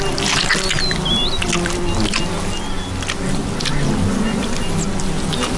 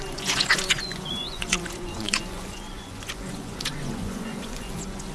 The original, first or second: first